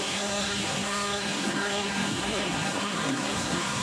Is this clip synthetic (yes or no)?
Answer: yes